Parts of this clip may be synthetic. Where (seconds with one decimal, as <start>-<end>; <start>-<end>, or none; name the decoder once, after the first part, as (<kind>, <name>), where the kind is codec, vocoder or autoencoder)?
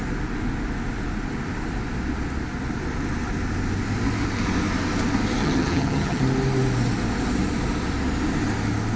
5.4-6.2 (vocoder, HiFi-GAN)